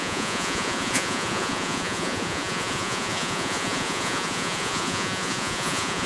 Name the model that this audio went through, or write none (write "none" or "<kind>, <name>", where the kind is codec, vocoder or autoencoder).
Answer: vocoder, Vocos